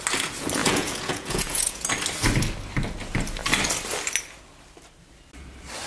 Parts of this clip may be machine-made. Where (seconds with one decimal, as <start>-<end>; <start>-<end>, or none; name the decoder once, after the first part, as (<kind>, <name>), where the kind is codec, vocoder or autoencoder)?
0.6-1.9 (vocoder, Vocos)